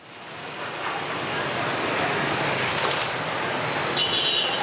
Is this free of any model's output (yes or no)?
yes